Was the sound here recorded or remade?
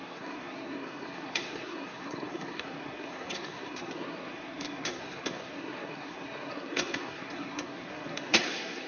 remade